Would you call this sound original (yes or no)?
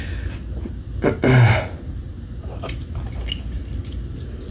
yes